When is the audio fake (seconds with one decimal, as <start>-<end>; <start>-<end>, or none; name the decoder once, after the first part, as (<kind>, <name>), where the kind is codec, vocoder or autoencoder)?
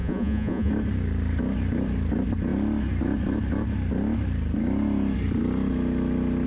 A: 0.0-0.7 (vocoder, Vocos)